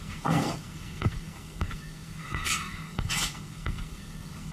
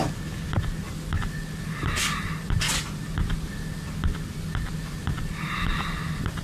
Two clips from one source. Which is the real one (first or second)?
second